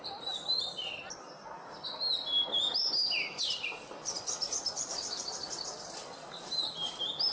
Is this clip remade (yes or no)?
no